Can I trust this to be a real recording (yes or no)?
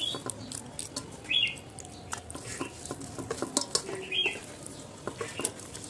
yes